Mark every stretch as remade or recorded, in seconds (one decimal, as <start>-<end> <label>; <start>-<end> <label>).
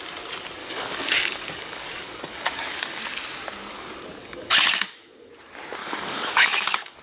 0.0-0.6 recorded; 0.6-3.0 remade; 3.0-4.2 recorded; 4.2-5.3 remade; 5.3-5.8 recorded; 5.8-7.0 remade